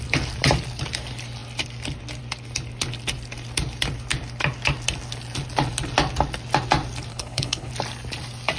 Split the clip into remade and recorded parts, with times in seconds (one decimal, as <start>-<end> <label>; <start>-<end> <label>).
0.0-7.1 recorded; 7.1-7.7 remade; 7.7-8.6 recorded